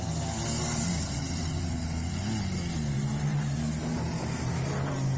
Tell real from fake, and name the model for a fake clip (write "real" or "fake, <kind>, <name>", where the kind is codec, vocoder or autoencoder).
real